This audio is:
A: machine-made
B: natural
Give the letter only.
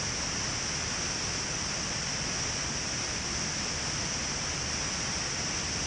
B